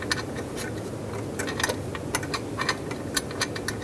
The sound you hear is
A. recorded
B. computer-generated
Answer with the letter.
A